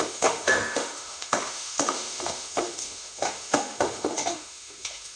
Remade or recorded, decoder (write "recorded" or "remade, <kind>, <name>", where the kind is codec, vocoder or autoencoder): remade, autoencoder, DAC-VAE